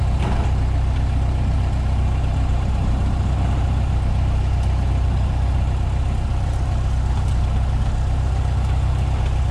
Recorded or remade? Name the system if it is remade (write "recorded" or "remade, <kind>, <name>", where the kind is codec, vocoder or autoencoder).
recorded